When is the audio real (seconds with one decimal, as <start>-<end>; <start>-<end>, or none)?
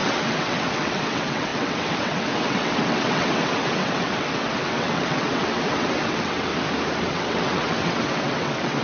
6.5-7.0